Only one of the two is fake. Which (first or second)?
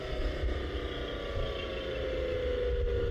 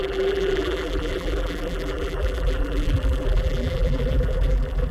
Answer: second